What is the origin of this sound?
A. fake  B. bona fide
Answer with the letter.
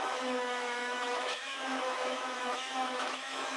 A